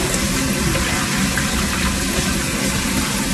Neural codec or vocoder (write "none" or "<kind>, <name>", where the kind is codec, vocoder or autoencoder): none